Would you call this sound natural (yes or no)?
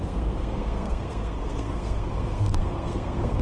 no